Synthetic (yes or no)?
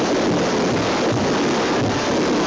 no